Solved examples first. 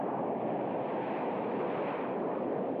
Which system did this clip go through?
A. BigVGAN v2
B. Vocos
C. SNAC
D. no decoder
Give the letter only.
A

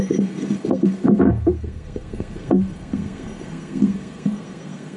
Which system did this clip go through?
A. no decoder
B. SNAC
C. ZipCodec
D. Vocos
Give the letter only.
B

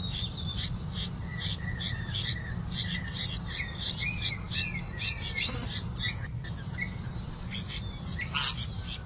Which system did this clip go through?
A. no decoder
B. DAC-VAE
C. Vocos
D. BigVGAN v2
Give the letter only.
A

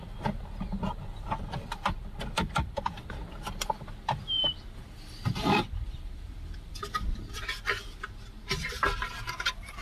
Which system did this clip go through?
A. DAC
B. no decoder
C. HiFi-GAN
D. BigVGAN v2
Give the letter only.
D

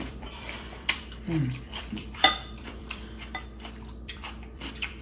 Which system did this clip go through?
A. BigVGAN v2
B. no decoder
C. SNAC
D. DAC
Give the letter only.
A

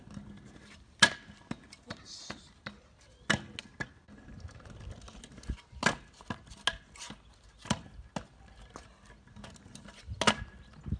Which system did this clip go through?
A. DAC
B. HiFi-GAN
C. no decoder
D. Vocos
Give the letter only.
C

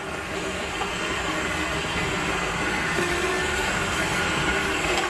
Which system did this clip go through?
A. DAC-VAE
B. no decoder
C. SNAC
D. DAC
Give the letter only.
C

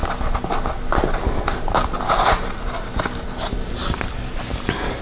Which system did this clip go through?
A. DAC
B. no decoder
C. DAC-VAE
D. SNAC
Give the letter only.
B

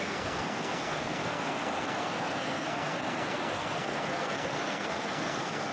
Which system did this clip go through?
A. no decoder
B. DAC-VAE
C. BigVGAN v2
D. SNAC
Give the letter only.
D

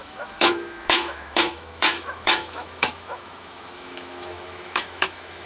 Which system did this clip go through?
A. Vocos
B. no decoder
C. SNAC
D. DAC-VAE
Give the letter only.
D